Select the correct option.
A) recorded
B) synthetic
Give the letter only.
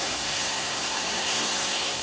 B